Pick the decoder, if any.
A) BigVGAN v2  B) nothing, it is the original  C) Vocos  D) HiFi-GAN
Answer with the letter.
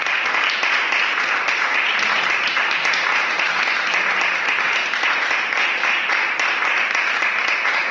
A